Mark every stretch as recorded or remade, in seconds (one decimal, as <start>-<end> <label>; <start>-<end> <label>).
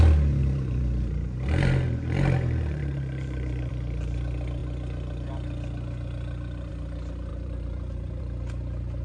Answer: 0.0-0.4 recorded; 0.4-3.7 remade; 3.7-7.3 recorded; 7.3-8.2 remade; 8.2-9.0 recorded